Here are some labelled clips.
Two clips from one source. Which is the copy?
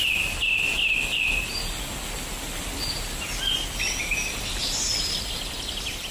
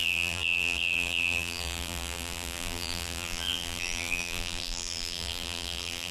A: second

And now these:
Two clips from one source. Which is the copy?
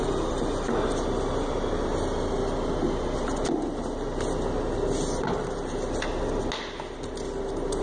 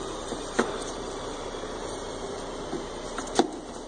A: second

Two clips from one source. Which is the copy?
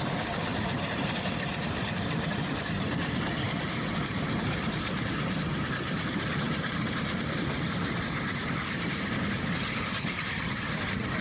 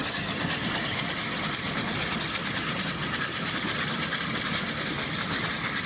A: first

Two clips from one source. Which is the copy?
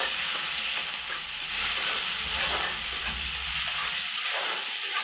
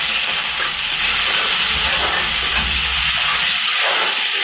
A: first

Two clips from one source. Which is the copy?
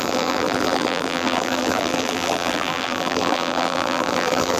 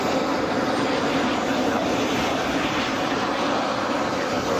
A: first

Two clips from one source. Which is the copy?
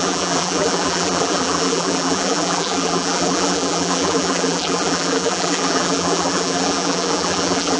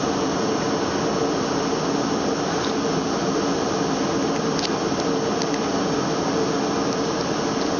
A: first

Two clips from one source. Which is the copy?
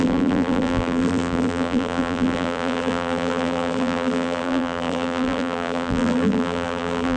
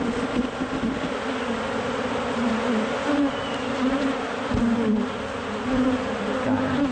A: first